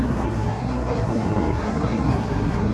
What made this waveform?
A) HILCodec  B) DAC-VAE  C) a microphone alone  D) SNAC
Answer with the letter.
D